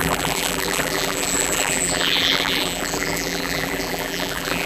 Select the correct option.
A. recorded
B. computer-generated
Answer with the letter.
B